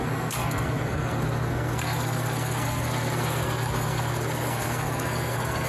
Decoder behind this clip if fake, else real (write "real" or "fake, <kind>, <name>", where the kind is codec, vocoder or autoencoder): fake, codec, SNAC